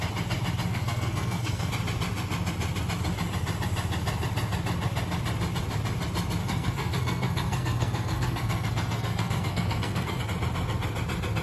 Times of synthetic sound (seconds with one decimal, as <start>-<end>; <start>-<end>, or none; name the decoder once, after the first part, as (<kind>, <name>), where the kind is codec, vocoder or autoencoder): 0.7-1.7 (codec, SNAC); 6.4-10.2

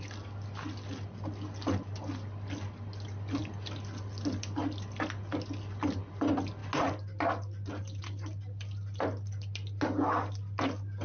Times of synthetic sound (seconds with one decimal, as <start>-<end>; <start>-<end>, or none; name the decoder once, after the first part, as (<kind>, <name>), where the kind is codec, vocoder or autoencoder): none

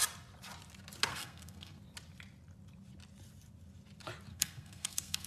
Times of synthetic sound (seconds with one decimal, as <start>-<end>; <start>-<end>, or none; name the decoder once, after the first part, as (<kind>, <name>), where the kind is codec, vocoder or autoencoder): 1.1-1.8 (codec, SNAC); 4.3-5.3

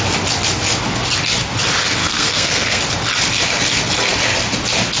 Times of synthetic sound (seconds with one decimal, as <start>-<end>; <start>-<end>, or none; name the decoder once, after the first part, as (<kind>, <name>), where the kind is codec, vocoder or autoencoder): 2.0-2.8 (codec, SNAC)